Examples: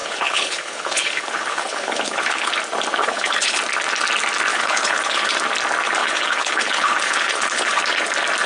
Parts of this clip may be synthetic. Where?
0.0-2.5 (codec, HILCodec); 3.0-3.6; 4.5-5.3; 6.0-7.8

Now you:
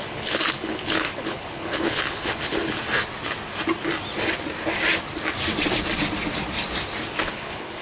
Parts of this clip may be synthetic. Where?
0.0-2.8 (codec, HILCodec); 7.2-7.8

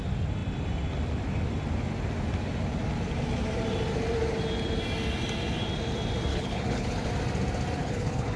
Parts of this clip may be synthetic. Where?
6.3-7.1 (codec, HILCodec); 7.8-8.4